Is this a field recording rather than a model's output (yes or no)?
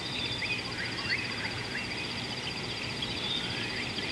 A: no